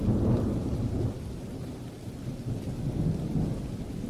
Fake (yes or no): no